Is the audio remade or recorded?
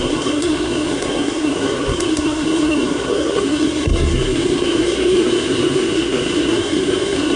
remade